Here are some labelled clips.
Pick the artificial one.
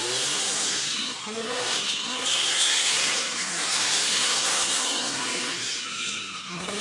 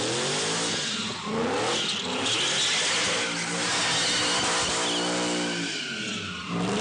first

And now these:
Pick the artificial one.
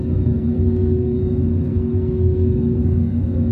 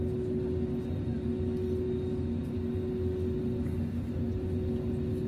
first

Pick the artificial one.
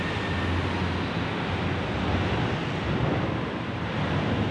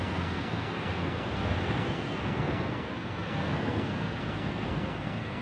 second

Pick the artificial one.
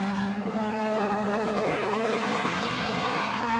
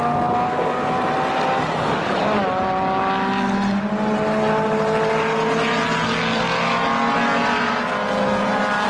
first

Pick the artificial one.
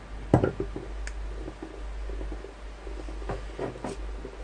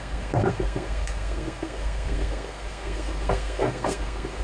second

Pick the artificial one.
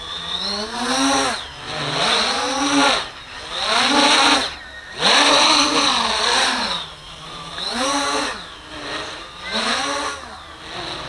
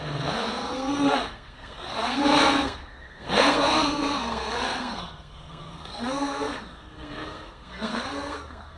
second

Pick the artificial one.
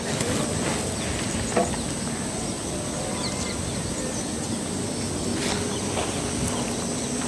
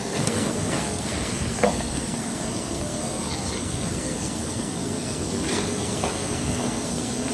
second